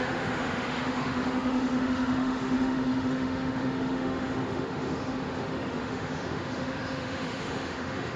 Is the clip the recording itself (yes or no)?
no